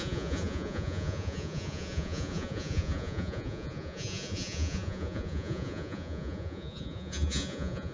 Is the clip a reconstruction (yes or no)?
yes